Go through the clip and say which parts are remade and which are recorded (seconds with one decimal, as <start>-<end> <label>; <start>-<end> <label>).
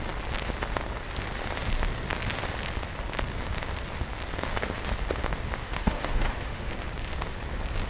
0.0-5.6 recorded; 5.6-6.7 remade; 6.7-7.9 recorded